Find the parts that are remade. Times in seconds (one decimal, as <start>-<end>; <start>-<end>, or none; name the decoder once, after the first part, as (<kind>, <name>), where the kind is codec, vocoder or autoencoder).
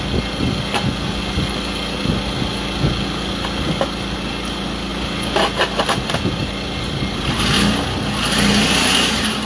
4.9-5.4 (vocoder, BigVGAN v2)